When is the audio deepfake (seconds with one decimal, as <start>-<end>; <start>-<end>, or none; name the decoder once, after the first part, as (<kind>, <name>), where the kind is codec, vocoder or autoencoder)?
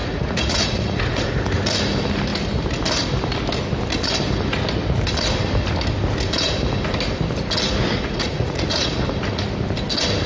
0.0-1.3 (vocoder, Vocos); 7.9-8.9